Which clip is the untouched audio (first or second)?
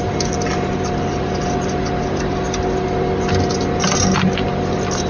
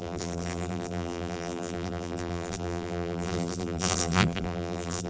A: first